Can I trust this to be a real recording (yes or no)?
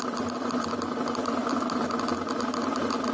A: yes